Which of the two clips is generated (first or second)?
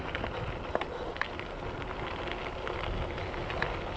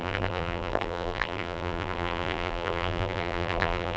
second